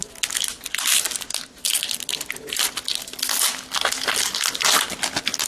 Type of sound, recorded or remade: recorded